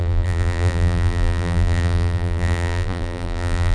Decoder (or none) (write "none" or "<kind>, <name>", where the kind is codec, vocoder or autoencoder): vocoder, BigVGAN v2